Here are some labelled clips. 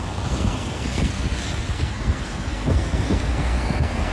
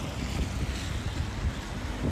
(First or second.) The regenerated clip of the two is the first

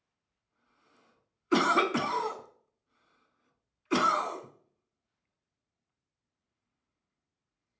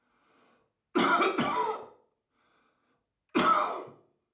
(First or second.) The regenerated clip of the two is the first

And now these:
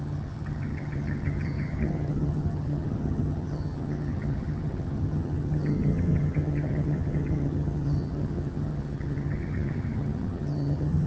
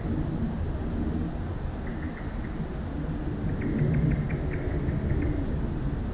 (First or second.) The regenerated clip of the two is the first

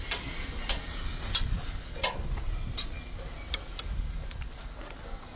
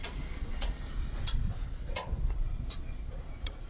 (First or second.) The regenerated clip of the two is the second